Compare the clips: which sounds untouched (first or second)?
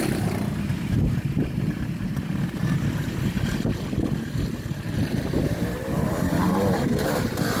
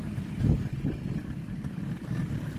second